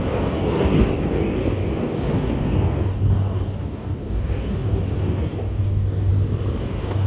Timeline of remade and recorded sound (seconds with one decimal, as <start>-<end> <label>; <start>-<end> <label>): 0.0-6.1 remade; 6.1-6.6 recorded; 6.6-7.1 remade